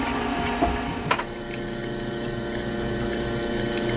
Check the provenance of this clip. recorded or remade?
recorded